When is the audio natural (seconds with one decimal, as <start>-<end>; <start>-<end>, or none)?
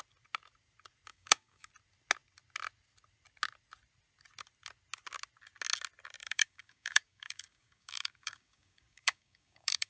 0.0-1.1; 1.7-6.2